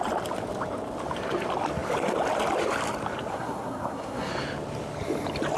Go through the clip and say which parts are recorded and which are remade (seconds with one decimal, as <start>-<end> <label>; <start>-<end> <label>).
0.0-3.3 recorded; 3.3-4.3 remade; 4.3-5.6 recorded

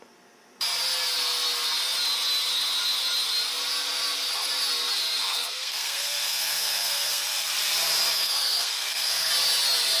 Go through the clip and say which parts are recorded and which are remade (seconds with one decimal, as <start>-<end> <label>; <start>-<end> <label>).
0.0-5.2 recorded; 5.2-7.5 remade; 7.5-8.1 recorded; 8.1-9.3 remade; 9.3-10.0 recorded